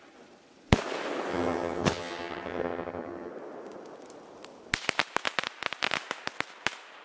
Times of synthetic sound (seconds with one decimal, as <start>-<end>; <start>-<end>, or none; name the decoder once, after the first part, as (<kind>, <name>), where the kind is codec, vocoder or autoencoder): 1.3-3.3 (vocoder, HiFi-GAN)